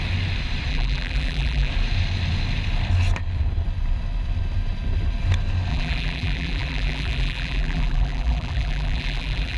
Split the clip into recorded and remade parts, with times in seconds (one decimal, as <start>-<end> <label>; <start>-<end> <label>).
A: 0.0-0.7 recorded; 0.7-1.7 remade; 1.7-5.7 recorded; 5.7-9.6 remade